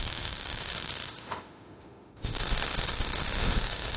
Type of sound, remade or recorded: remade